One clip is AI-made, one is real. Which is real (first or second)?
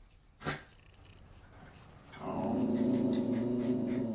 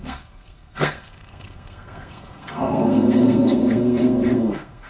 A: first